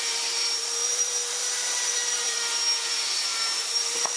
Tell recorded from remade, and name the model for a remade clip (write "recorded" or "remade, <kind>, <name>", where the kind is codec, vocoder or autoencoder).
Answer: remade, vocoder, BigVGAN v2